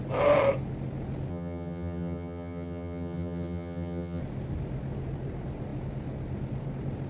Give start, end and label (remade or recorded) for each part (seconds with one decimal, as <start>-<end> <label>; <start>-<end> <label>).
0.0-1.3 recorded; 1.3-4.2 remade; 4.2-7.1 recorded